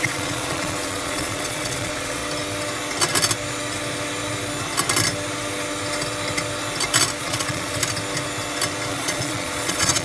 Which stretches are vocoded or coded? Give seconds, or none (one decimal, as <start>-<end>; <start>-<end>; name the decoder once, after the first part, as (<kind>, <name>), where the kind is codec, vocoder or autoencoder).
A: 0.0-2.2 (vocoder, Vocos); 7.2-7.8; 8.9-10.0